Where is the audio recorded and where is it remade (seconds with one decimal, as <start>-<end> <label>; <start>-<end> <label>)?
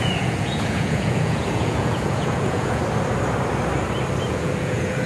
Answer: 0.0-2.8 remade; 2.8-4.3 recorded; 4.3-5.1 remade